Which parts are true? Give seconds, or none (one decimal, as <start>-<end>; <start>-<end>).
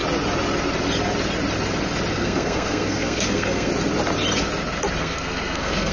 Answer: 0.0-2.1; 3.7-5.0